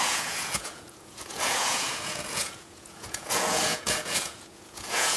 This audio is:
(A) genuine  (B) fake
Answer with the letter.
B